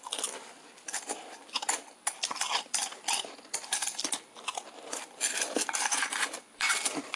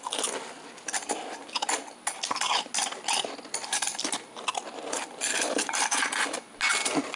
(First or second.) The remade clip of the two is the first